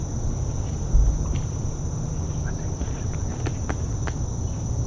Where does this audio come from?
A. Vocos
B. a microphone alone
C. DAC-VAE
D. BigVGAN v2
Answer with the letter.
B